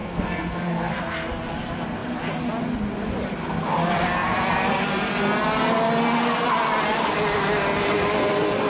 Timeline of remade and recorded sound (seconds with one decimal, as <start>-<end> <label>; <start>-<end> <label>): 0.0-1.3 remade; 1.3-8.7 recorded